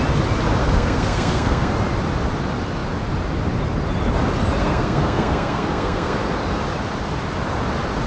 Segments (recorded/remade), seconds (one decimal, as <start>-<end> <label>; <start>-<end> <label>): 0.0-0.6 recorded; 0.6-1.7 remade; 1.7-4.6 recorded; 4.6-6.2 remade; 6.2-8.1 recorded